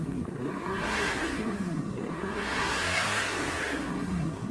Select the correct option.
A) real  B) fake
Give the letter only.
B